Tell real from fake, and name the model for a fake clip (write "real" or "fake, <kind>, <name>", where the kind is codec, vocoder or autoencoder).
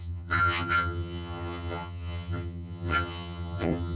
fake, vocoder, HiFi-GAN